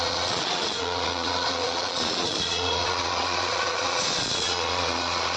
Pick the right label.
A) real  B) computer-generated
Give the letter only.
B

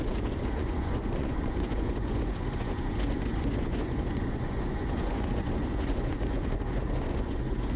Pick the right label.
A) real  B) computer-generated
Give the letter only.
B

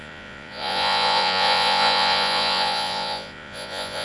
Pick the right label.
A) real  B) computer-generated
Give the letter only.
B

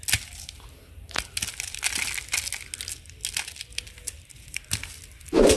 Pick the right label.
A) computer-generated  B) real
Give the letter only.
B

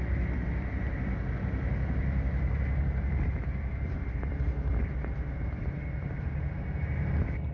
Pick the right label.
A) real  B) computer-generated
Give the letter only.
A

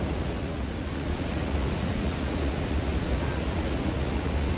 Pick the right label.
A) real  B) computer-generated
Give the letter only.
B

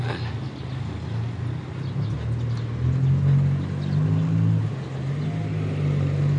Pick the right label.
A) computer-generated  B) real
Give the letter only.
B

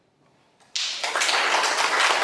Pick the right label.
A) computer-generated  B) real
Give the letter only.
B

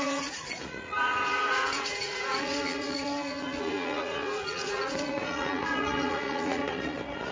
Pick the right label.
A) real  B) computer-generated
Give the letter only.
B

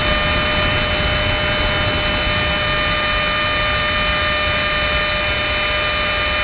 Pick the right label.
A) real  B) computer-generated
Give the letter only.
A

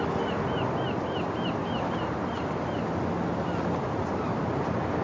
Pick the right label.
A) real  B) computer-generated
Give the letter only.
A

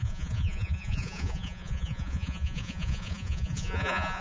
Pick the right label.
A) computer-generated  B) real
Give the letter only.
A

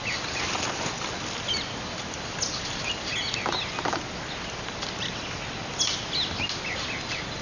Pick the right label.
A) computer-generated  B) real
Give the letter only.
B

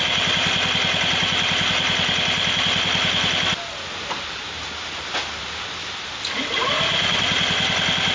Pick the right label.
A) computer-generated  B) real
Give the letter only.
B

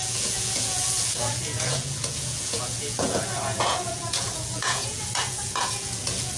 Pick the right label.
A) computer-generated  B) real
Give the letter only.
A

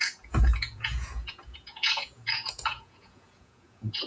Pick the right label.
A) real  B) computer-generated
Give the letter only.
B